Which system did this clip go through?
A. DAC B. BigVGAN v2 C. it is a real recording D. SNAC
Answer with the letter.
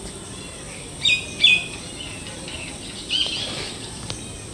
C